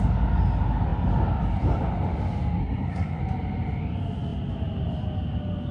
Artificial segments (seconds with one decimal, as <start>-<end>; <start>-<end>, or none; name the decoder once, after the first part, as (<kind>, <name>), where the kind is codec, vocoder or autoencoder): 2.6-3.2 (codec, SNAC)